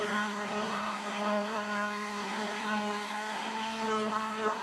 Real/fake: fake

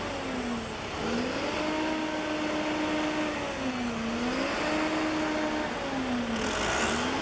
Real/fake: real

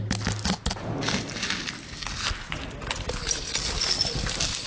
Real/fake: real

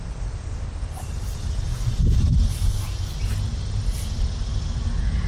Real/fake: real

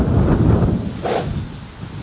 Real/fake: real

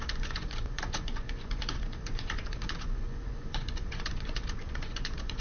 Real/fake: fake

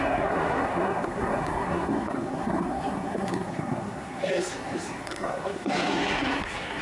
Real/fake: fake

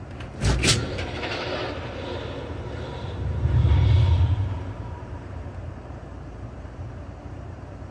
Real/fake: fake